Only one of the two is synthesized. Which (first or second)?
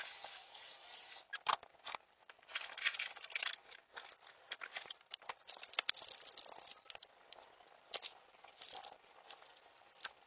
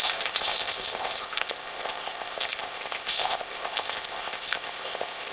second